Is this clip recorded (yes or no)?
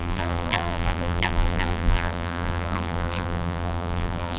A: no